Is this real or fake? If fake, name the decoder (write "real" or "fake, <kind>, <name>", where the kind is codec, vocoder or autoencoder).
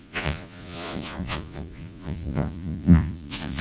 fake, vocoder, Vocos